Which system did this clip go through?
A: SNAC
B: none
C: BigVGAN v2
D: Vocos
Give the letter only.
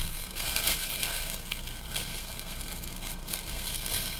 A